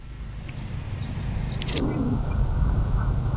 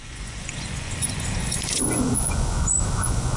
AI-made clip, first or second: second